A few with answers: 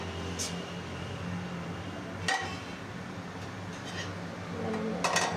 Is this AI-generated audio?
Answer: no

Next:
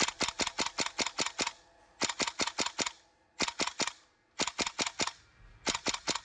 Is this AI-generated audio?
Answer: no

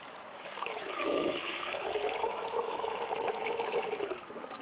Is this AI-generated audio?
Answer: yes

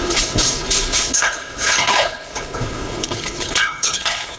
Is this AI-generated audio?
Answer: yes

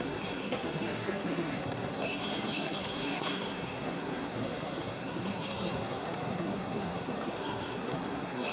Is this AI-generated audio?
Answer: yes